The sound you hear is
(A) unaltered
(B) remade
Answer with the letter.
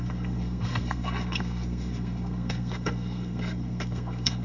B